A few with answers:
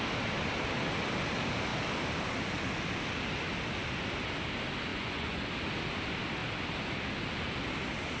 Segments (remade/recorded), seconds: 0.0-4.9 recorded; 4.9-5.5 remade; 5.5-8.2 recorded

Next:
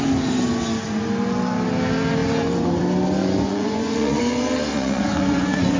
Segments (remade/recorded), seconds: 0.0-3.2 recorded; 3.2-4.2 remade; 4.2-4.7 recorded; 4.7-5.8 remade

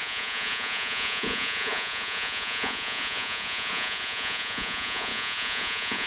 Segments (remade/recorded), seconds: 0.0-6.1 remade